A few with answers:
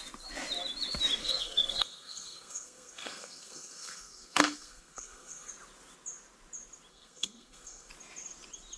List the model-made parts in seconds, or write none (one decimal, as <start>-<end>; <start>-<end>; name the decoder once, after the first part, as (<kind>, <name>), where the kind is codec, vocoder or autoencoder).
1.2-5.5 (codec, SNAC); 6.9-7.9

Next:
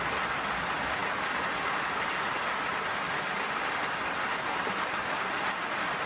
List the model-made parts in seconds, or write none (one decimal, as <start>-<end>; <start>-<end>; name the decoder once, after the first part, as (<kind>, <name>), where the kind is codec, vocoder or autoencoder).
none

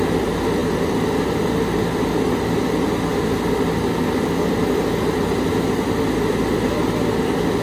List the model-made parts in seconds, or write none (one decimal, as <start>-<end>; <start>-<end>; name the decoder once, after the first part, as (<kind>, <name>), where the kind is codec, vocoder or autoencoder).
none

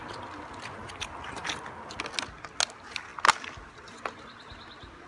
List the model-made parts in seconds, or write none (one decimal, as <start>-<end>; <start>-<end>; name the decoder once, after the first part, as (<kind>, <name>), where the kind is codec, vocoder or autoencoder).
none